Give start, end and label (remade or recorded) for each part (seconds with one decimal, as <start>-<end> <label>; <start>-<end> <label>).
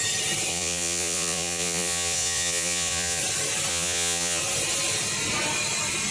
0.0-0.5 recorded; 0.5-3.2 remade; 3.2-3.7 recorded; 3.7-4.4 remade; 4.4-6.1 recorded